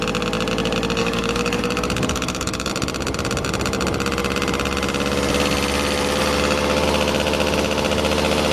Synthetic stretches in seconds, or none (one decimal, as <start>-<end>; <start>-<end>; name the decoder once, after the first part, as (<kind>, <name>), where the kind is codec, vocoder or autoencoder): 1.0-2.7 (codec, DAC)